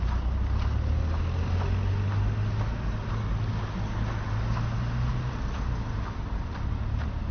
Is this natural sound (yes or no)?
yes